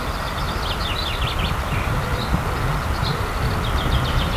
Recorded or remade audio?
recorded